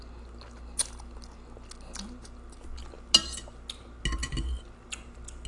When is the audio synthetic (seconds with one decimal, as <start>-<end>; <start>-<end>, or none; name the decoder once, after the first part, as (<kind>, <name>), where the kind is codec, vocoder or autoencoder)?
none